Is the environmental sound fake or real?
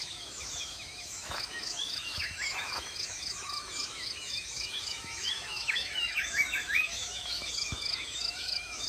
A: fake